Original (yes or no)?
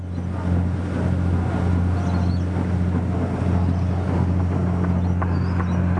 yes